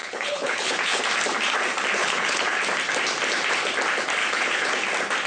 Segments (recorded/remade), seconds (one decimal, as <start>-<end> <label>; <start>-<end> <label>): 0.0-1.0 remade; 1.0-2.0 recorded; 2.0-2.6 remade; 2.6-4.2 recorded; 4.2-4.7 remade; 4.7-5.3 recorded